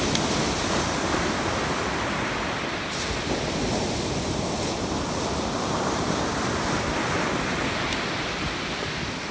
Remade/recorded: recorded